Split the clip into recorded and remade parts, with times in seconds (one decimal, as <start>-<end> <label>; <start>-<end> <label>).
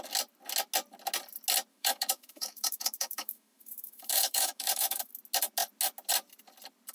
0.0-1.7 recorded; 1.7-5.1 remade; 5.1-6.9 recorded